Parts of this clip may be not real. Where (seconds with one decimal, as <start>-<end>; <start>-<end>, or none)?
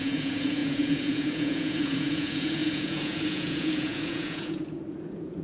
0.0-5.4